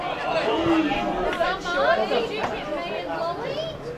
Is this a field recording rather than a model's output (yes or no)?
yes